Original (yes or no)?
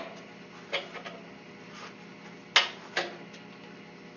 yes